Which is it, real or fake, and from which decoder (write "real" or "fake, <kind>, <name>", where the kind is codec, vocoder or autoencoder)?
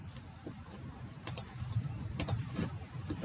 fake, vocoder, BigVGAN v2